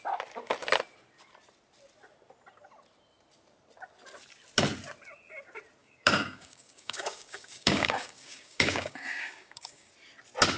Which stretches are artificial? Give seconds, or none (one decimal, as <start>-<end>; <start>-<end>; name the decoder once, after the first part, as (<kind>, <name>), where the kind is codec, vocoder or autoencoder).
5.8-9.9 (codec, DAC)